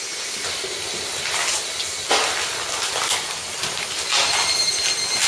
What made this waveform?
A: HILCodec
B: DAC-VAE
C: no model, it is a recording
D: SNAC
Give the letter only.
C